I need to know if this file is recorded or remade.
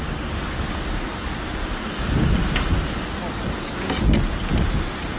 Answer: recorded